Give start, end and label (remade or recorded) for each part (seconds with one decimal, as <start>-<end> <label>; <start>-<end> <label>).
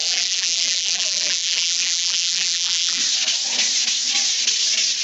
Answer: 0.0-3.0 remade; 3.0-5.0 recorded